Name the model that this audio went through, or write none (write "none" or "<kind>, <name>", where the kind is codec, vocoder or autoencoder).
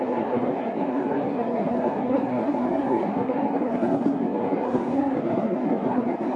codec, SNAC